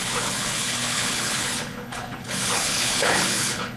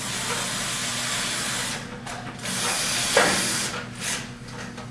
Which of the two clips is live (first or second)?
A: second